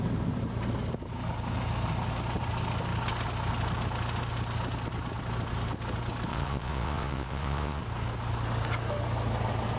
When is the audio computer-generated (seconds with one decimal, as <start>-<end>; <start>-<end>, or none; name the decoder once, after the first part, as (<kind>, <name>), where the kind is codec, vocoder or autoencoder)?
6.3-7.8 (vocoder, Vocos)